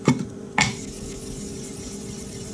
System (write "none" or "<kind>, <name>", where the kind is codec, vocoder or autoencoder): none